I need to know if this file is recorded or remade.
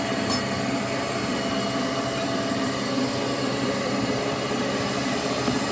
recorded